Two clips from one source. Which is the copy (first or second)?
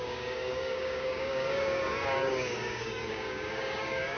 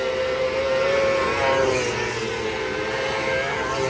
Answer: first